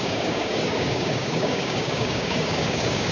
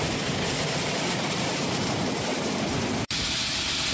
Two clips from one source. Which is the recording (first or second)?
second